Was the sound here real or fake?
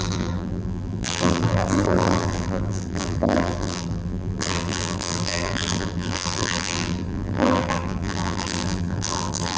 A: fake